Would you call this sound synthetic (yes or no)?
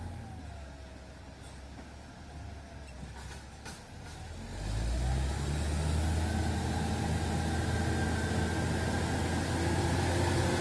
no